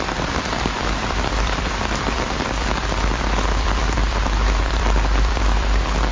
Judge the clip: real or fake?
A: fake